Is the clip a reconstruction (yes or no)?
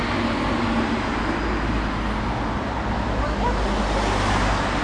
no